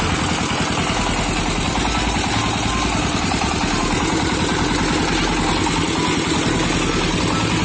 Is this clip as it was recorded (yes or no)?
yes